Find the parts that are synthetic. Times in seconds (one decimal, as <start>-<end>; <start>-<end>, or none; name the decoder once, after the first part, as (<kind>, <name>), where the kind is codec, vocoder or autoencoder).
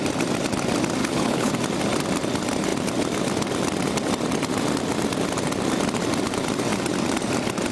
1.0-1.5 (codec, HILCodec)